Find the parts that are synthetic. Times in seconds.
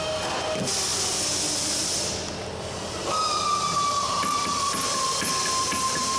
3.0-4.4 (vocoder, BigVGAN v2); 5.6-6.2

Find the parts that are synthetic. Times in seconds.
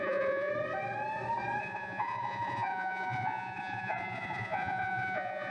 0.0-0.5 (vocoder, Vocos); 1.6-5.5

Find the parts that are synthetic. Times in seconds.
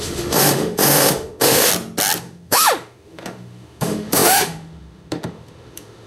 0.0-1.7 (autoencoder, DAC-VAE); 2.2-6.1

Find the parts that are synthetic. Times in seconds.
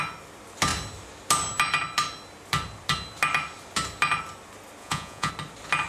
4.8-5.3 (vocoder, Vocos)